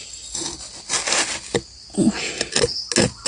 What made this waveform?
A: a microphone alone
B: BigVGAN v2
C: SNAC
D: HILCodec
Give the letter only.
A